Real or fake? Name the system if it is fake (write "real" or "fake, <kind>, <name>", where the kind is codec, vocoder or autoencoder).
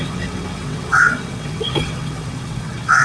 fake, vocoder, WaveNeXt